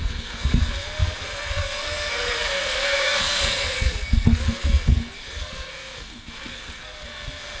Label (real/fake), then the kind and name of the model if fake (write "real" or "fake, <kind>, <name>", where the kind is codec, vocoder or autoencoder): fake, codec, SNAC